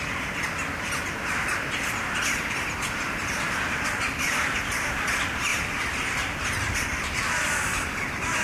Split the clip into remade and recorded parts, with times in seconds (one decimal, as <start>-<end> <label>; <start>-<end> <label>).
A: 0.0-5.5 recorded; 5.5-7.2 remade; 7.2-8.4 recorded